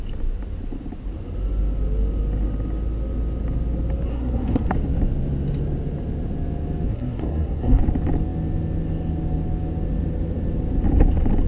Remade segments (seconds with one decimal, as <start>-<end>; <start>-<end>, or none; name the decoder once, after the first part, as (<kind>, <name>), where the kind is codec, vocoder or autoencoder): 4.1-4.7 (codec, SNAC); 6.9-7.8